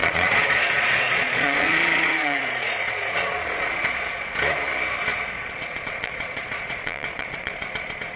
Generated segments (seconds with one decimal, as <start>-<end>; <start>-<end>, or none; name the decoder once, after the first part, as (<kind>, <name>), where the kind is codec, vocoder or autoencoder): 0.0-4.1 (vocoder, Vocos); 5.1-7.7